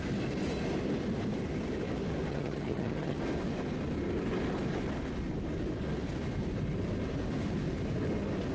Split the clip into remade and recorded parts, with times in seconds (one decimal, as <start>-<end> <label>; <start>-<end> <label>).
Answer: 0.0-2.3 recorded; 2.3-3.2 remade; 3.2-8.5 recorded